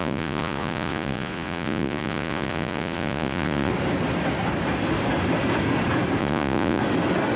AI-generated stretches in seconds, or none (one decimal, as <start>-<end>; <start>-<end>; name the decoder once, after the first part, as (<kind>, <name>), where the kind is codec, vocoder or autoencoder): 0.0-3.7 (vocoder, Vocos); 6.2-6.8